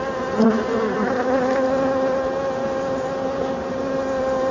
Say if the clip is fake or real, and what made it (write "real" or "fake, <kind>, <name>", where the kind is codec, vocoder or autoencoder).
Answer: real